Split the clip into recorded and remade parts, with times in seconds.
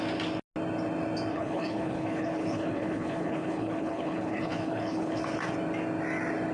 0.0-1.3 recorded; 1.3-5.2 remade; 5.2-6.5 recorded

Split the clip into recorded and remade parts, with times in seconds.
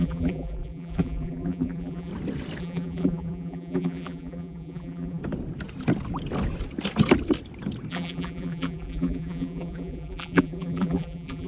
0.0-2.1 remade; 2.1-2.6 recorded; 2.6-5.2 remade; 5.2-7.9 recorded; 7.9-11.5 remade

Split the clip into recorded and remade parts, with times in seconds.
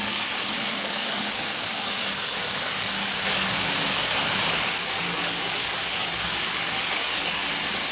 0.0-7.4 remade; 7.4-7.9 recorded